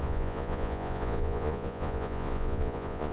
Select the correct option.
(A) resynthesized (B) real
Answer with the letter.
A